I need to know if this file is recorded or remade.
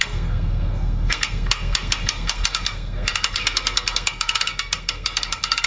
remade